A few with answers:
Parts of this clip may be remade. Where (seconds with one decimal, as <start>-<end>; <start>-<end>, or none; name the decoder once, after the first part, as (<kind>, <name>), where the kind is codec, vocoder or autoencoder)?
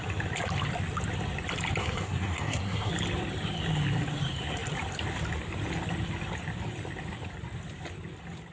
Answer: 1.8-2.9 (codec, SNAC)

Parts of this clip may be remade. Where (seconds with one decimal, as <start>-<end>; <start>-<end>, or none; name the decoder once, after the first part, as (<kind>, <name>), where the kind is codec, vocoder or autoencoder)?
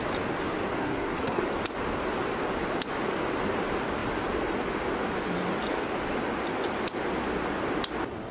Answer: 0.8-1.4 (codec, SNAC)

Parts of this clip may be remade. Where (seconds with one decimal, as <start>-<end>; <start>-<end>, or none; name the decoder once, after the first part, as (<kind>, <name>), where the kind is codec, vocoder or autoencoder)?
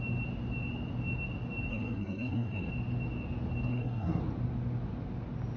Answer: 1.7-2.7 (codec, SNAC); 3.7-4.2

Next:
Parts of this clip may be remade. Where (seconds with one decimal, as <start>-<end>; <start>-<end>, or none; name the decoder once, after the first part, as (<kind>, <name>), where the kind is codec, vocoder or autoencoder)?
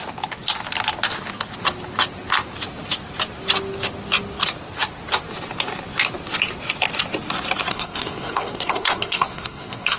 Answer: 7.7-10.0 (codec, SNAC)